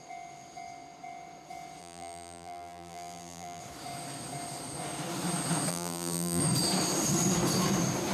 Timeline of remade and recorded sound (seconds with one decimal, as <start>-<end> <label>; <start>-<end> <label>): 0.0-1.8 recorded; 1.8-3.6 remade; 3.6-5.7 recorded; 5.7-6.4 remade; 6.4-8.1 recorded